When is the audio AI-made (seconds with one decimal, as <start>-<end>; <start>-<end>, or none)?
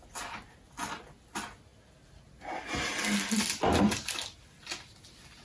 none